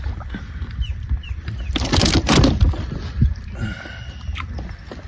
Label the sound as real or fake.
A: fake